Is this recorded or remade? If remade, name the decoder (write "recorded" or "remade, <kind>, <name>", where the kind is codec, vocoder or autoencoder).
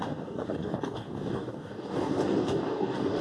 remade, codec, DAC